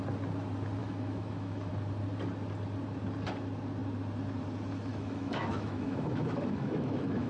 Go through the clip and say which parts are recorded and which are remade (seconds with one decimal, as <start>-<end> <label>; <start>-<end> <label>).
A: 0.0-0.8 recorded; 0.8-1.7 remade; 1.7-4.9 recorded; 4.9-7.3 remade